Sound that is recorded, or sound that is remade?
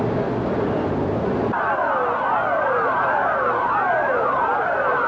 recorded